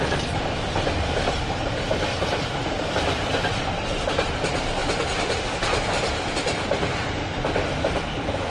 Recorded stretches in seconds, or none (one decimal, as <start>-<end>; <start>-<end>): 0.0-2.1; 3.3-4.8